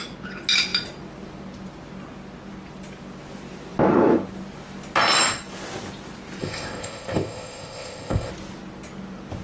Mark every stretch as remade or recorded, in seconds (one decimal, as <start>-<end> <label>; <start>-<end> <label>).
0.0-6.4 recorded; 6.4-8.3 remade; 8.3-9.4 recorded